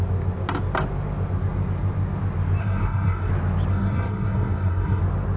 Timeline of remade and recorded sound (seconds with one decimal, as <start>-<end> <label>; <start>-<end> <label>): 0.0-2.6 recorded; 2.6-3.3 remade; 3.3-3.7 recorded; 3.7-5.0 remade; 5.0-5.4 recorded